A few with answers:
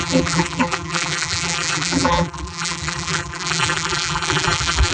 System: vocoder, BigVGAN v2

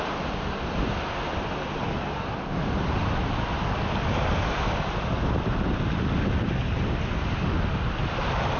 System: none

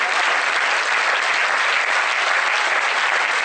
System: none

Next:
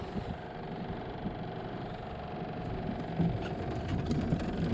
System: none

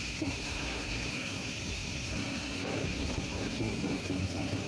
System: codec, SNAC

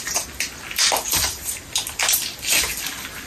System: none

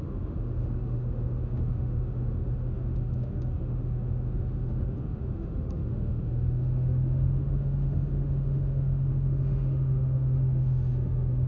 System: autoencoder, DAC-VAE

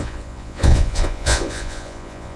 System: vocoder, Vocos